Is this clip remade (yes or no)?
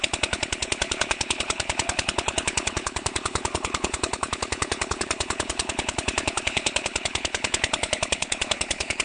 yes